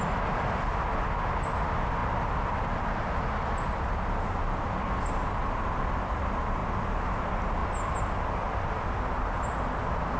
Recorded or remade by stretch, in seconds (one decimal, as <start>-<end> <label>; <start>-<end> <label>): 0.0-10.2 recorded